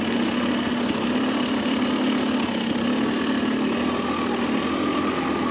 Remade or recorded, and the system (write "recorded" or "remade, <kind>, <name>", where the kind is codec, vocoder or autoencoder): recorded